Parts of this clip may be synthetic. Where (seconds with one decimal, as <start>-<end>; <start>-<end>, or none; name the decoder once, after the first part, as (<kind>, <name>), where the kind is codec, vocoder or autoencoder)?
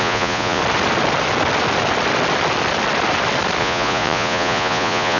0.0-0.6 (vocoder, Vocos); 3.6-5.2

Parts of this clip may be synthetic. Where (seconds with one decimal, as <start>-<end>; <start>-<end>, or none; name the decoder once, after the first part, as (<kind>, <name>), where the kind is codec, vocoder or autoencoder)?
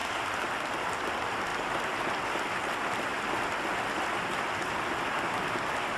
0.0-0.5 (vocoder, BigVGAN v2); 1.5-2.1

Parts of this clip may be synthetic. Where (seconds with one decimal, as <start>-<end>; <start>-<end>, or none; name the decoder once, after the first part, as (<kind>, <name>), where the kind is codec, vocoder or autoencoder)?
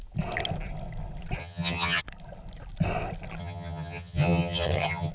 1.4-2.0 (vocoder, HiFi-GAN); 3.4-5.1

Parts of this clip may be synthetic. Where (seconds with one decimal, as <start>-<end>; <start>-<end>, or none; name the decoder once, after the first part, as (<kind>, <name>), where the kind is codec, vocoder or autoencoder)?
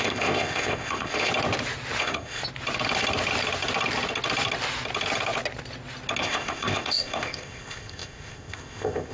0.0-1.3 (codec, ZipCodec); 2.0-2.4; 6.2-9.1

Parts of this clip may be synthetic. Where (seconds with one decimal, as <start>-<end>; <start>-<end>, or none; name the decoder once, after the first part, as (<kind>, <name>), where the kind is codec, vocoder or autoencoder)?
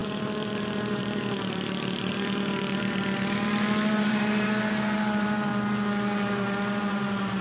0.0-5.5 (vocoder, BigVGAN v2); 6.8-7.4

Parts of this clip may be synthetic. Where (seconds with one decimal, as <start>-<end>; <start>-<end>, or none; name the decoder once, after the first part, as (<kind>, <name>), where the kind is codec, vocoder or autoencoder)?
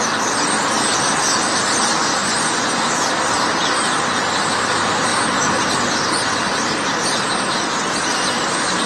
2.2-2.9 (vocoder, Vocos)